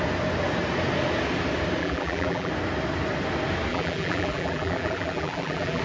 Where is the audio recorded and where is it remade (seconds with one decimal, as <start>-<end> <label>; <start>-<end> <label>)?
0.0-1.8 recorded; 1.8-2.5 remade; 2.5-3.7 recorded; 3.7-5.8 remade